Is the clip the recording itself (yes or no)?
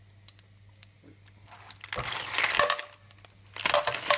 yes